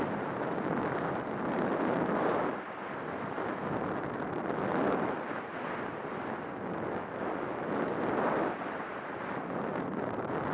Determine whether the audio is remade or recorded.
recorded